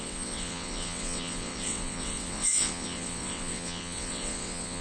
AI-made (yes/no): yes